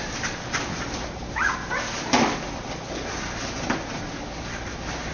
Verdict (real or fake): real